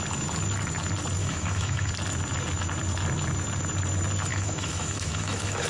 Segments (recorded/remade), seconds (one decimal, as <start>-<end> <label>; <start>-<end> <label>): 0.0-1.2 recorded; 1.2-1.9 remade; 1.9-4.3 recorded; 4.3-5.7 remade